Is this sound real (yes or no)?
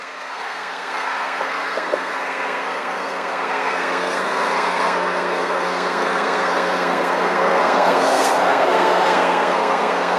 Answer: no